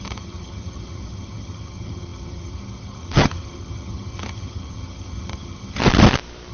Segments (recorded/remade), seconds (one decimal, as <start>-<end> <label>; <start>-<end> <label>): 0.0-5.8 remade; 5.8-6.5 recorded